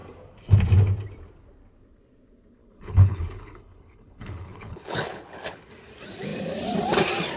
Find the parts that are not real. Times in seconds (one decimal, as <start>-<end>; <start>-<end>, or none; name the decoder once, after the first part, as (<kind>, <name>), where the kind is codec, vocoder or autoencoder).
2.6-5.7 (codec, HILCodec)